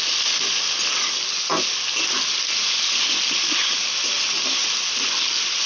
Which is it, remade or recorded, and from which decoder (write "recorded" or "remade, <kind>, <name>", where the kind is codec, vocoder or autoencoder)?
recorded